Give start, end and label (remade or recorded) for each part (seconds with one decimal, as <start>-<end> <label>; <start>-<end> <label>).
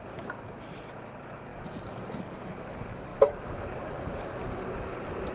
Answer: 0.0-5.3 recorded